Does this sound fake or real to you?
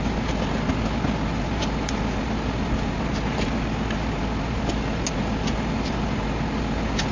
real